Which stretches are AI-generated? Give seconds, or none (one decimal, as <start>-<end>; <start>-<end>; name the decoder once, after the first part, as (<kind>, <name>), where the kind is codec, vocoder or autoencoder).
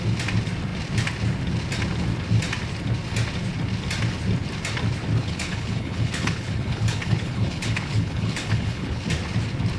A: 5.2-9.0 (codec, HILCodec)